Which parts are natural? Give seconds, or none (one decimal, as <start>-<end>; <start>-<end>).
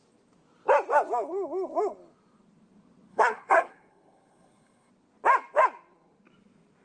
0.0-3.1; 4.9-6.8